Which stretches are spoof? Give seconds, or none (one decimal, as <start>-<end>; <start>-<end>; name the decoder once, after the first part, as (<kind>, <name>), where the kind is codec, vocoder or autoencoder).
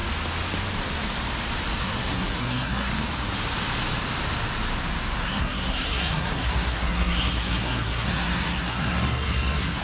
1.8-2.9 (codec, SNAC); 5.2-9.8